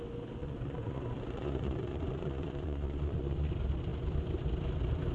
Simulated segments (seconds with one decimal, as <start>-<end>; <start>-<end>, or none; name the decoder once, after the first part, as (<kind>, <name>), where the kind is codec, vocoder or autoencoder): 0.4-3.5 (vocoder, Vocos)